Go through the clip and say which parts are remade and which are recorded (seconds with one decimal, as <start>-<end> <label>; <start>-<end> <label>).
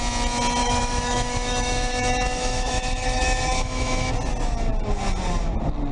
0.0-0.6 recorded; 0.6-4.1 remade; 4.1-5.9 recorded